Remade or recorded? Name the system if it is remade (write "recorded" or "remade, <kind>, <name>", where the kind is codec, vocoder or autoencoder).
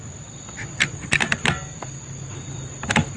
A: recorded